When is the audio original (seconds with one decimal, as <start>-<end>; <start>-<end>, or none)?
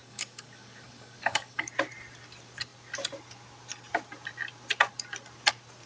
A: 1.7-5.9